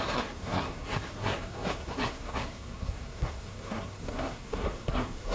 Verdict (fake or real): fake